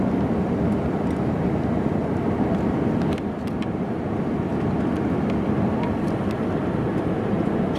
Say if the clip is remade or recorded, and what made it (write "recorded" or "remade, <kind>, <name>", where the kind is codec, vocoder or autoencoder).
recorded